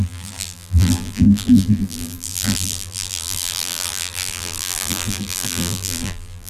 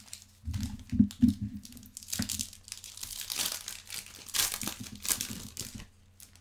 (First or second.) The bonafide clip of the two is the second